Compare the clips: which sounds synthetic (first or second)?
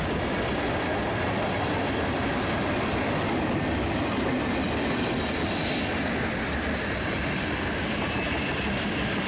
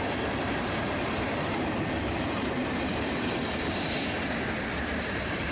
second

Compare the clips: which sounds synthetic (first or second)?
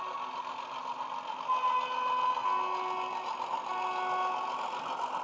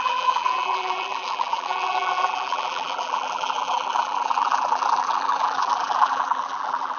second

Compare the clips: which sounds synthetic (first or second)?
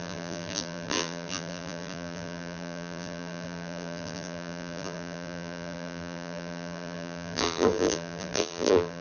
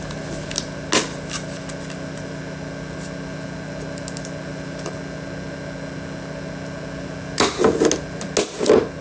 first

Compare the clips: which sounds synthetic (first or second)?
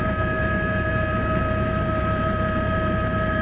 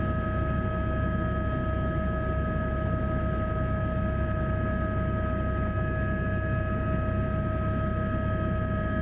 first